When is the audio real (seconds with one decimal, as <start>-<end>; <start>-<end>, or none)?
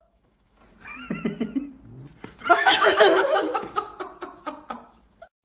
0.6-2.5; 3.9-4.9